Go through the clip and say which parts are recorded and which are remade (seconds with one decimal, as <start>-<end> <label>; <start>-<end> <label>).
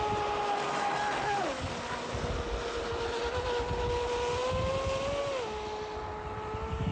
0.0-6.9 recorded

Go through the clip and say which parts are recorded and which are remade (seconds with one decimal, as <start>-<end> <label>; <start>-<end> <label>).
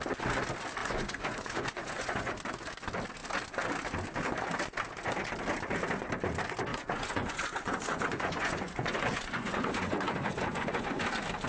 0.0-0.8 recorded; 0.8-2.3 remade; 2.3-6.7 recorded; 6.7-11.0 remade; 11.0-11.5 recorded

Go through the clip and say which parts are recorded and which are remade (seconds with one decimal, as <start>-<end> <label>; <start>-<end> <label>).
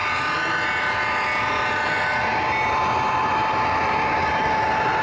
0.0-5.0 recorded